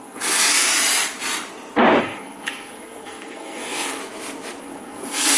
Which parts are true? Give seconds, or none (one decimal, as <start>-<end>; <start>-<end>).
0.7-2.0; 4.0-4.6